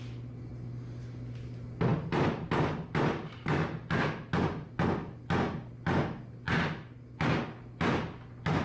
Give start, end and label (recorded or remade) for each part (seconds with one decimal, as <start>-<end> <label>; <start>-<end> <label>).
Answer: 0.0-0.5 recorded; 0.5-1.0 remade; 1.0-8.6 recorded